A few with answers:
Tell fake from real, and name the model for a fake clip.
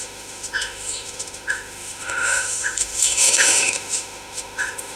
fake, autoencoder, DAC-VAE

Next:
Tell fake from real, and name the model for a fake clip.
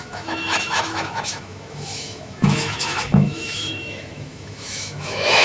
fake, autoencoder, DAC-VAE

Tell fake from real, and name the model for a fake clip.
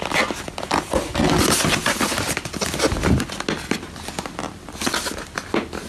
real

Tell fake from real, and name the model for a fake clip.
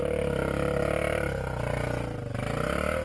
real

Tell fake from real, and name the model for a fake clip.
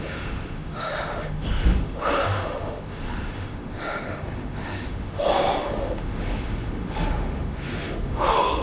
fake, autoencoder, DAC-VAE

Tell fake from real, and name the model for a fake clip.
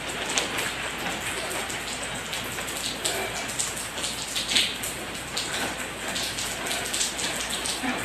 real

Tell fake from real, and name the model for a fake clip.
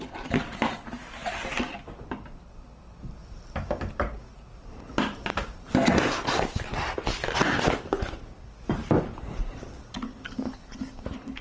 real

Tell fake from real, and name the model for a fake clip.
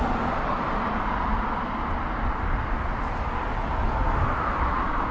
real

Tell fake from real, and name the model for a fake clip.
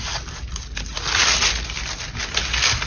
real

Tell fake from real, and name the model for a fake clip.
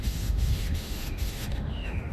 fake, autoencoder, DAC-VAE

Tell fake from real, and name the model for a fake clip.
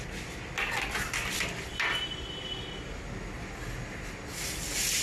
real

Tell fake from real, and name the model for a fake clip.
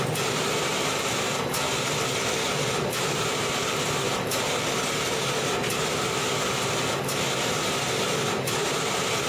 real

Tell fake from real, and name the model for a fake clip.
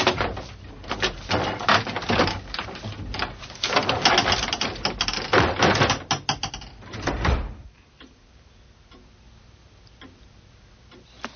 real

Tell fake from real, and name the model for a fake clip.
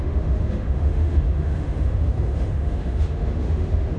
fake, autoencoder, DAC-VAE